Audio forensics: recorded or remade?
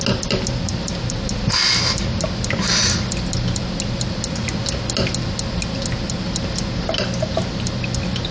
recorded